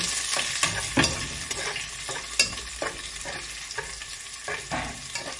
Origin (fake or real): real